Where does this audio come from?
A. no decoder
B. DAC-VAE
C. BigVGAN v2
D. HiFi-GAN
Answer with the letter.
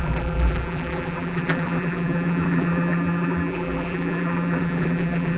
C